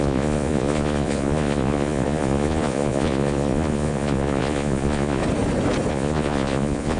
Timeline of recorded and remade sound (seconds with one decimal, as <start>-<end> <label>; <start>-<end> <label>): 0.0-5.2 remade; 5.2-5.9 recorded; 5.9-7.0 remade